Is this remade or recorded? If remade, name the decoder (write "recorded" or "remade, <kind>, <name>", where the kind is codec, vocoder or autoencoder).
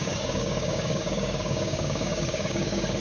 remade, codec, DAC